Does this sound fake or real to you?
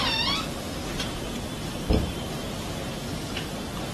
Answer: fake